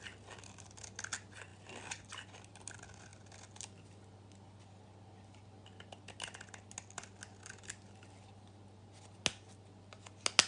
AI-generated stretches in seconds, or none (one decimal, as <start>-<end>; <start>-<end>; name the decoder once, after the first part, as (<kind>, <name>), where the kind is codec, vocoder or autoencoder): none